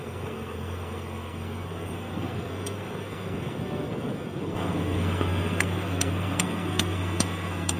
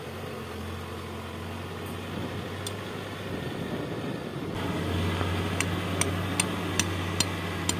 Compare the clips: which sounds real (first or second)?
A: second